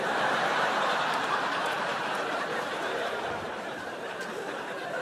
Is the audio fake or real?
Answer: fake